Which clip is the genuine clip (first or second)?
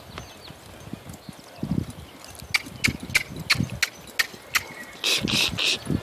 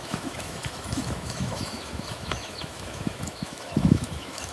first